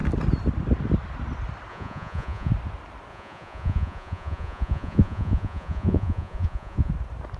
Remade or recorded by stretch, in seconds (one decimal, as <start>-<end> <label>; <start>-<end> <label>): 0.0-1.7 recorded; 1.7-2.5 remade; 2.5-3.1 recorded; 3.1-6.9 remade; 6.9-7.4 recorded